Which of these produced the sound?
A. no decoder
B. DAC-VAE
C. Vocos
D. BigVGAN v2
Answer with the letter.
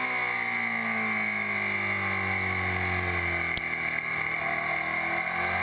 A